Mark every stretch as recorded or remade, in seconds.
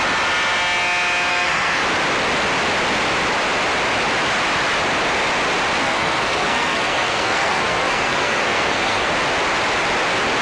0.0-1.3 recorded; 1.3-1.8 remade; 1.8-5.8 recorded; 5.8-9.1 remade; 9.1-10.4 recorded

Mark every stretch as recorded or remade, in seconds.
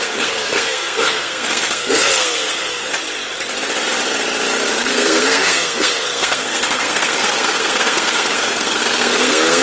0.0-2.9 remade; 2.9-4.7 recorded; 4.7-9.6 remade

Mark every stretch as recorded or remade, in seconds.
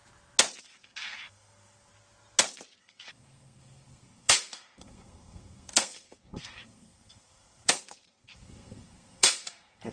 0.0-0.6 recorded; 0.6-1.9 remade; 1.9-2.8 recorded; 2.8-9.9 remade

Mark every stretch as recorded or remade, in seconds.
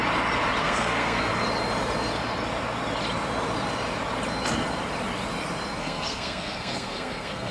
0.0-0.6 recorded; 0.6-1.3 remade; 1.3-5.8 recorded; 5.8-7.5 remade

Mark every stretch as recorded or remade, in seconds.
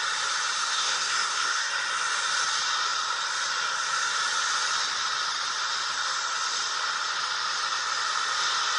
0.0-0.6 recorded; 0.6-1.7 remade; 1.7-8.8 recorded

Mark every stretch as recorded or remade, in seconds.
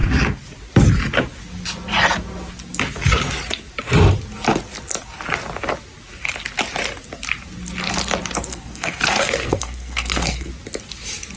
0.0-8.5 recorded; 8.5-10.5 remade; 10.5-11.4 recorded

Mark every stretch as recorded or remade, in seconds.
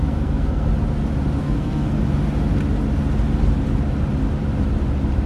0.0-0.7 remade; 0.7-1.4 recorded; 1.4-2.0 remade; 2.0-5.3 recorded